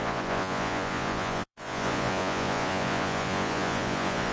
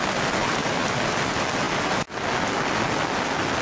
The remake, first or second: first